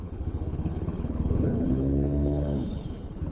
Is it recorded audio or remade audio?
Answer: remade